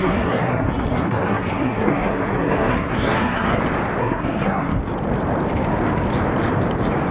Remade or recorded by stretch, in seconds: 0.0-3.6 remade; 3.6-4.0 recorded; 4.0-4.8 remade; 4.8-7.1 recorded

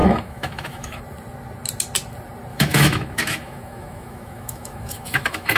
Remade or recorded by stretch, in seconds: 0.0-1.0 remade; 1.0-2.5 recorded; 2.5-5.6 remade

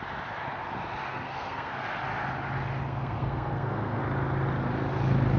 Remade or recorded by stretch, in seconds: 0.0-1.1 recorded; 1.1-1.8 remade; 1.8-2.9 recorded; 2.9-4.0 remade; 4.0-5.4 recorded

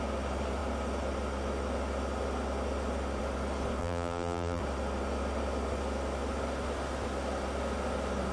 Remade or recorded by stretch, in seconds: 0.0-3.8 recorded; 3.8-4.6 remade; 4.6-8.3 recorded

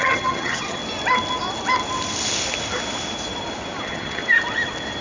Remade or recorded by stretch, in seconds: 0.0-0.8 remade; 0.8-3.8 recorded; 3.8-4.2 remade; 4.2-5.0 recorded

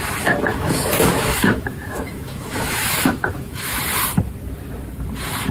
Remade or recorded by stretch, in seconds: 0.0-0.5 recorded; 0.5-3.8 remade; 3.8-5.5 recorded

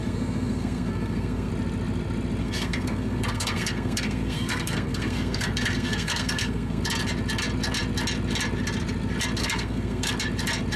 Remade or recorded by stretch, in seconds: 0.0-1.5 remade; 1.5-2.4 recorded; 2.4-6.8 remade; 6.8-9.4 recorded; 9.4-10.1 remade; 10.1-10.8 recorded